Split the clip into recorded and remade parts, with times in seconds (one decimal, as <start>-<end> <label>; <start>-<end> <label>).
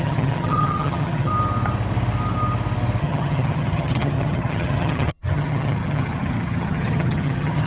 0.0-1.3 remade; 1.3-3.0 recorded; 3.0-7.7 remade